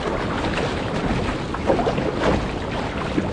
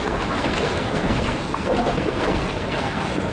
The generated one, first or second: second